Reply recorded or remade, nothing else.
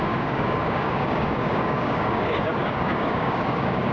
remade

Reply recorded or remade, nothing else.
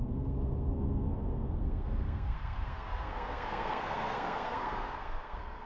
remade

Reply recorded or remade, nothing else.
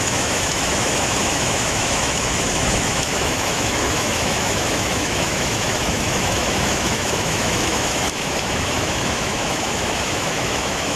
remade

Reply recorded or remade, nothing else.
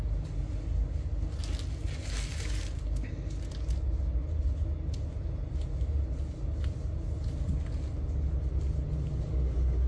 recorded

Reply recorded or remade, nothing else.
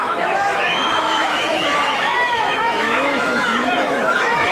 remade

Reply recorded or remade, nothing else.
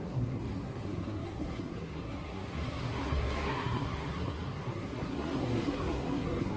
remade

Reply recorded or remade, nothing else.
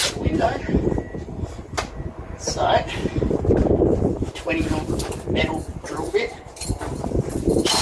recorded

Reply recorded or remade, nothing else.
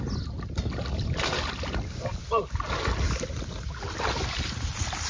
recorded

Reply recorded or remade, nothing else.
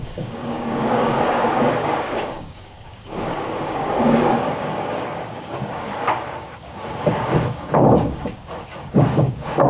remade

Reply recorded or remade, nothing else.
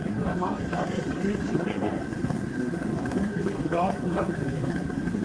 remade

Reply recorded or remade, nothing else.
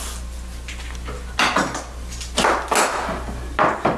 recorded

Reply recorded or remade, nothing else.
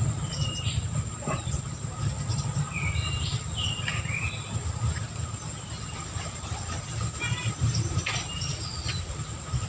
remade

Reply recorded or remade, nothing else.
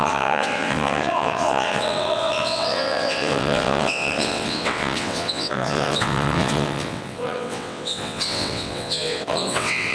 remade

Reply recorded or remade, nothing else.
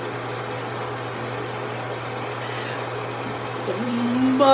recorded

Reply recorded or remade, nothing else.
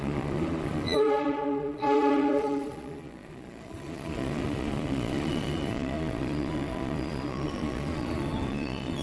remade